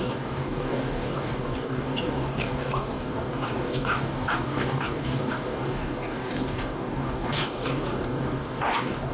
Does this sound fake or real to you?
fake